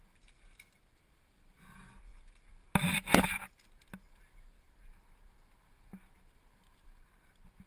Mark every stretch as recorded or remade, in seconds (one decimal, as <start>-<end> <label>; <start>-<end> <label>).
0.0-7.7 recorded